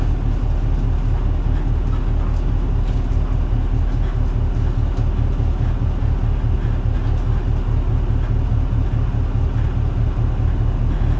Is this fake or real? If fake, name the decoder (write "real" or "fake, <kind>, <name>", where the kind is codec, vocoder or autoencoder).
real